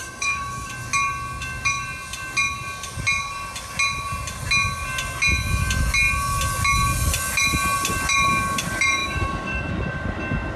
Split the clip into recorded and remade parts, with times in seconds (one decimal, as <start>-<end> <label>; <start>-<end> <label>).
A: 0.0-0.7 remade; 0.7-9.0 recorded; 9.0-9.7 remade; 9.7-10.6 recorded